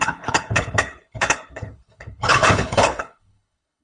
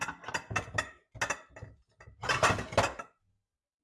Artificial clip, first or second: first